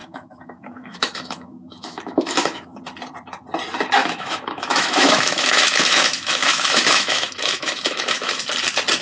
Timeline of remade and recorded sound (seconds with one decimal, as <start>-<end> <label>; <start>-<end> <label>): 0.0-2.8 remade; 2.8-4.0 recorded; 4.0-8.4 remade; 8.4-9.0 recorded